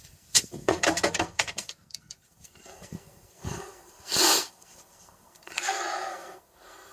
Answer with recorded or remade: remade